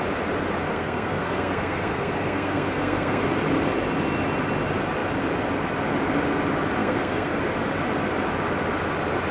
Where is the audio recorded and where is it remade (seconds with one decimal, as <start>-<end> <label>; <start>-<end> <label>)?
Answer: 0.0-0.7 recorded; 0.7-3.2 remade; 3.2-6.8 recorded; 6.8-7.4 remade; 7.4-9.3 recorded